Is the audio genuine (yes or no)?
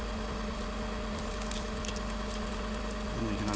yes